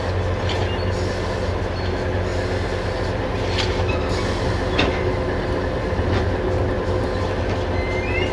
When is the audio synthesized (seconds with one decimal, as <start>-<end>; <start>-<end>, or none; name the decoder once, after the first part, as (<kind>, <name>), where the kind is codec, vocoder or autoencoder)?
none